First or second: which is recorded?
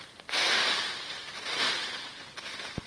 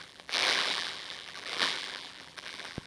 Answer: first